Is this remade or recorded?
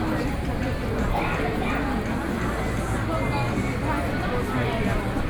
recorded